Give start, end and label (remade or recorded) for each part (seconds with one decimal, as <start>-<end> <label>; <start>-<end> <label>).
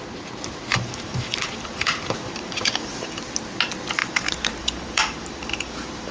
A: 0.0-0.7 recorded; 0.7-3.2 remade; 3.2-4.0 recorded; 4.0-6.1 remade